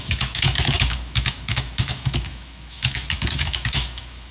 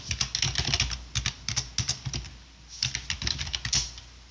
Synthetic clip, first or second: first